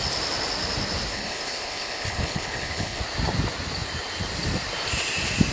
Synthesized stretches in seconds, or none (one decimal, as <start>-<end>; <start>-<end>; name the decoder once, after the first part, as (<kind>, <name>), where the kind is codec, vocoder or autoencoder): 1.1-3.0 (codec, HILCodec)